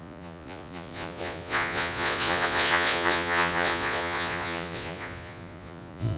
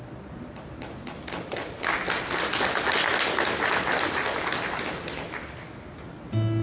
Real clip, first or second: second